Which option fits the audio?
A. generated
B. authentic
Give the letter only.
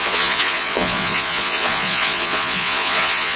A